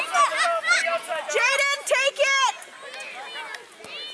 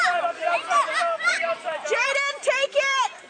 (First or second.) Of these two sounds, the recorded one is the first